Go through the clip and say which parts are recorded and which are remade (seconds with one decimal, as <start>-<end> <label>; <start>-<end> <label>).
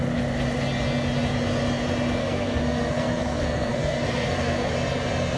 0.0-2.2 recorded; 2.2-4.7 remade; 4.7-5.4 recorded